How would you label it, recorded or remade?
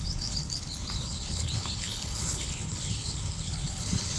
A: remade